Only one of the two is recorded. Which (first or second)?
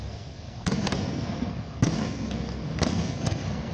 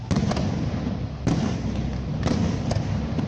second